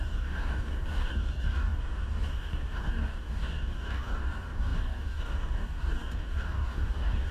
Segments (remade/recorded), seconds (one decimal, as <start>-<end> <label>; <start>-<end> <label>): 0.0-7.3 remade